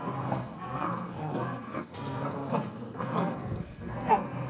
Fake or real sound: fake